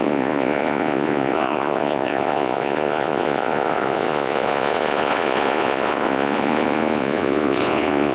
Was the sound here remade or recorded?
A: remade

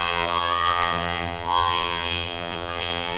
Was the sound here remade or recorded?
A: remade